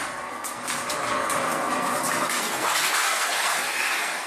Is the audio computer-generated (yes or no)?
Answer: yes